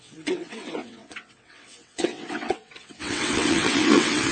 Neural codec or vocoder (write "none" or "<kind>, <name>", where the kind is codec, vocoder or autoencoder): vocoder, WaveNeXt